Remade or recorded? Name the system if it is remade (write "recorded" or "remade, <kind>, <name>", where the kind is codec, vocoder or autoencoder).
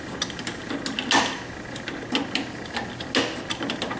recorded